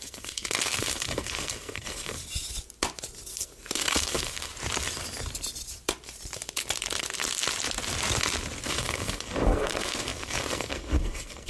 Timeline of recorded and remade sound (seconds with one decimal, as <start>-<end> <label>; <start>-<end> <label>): 0.0-2.2 remade; 2.2-3.3 recorded; 3.3-4.5 remade; 4.5-8.7 recorded; 8.7-11.5 remade